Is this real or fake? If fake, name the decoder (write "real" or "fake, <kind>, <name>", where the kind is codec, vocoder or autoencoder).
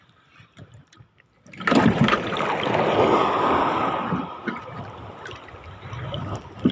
real